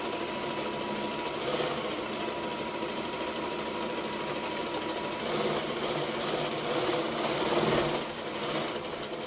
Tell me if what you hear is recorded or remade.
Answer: recorded